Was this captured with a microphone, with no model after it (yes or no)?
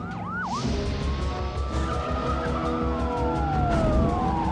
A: yes